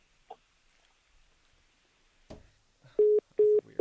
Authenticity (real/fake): real